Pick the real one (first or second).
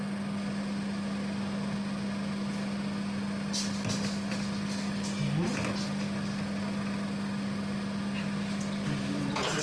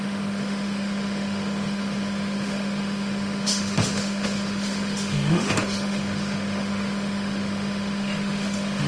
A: first